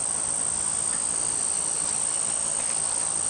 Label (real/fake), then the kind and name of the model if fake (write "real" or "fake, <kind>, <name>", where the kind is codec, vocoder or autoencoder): real